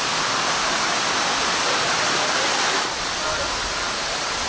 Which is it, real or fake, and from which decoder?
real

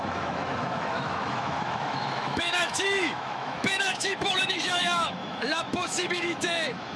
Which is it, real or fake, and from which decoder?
fake, autoencoder, DAC-VAE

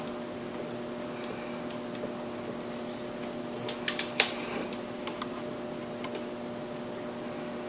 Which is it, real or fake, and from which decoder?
real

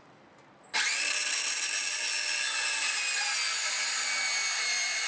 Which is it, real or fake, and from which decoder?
real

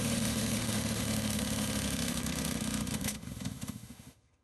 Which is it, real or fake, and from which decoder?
fake, autoencoder, DAC-VAE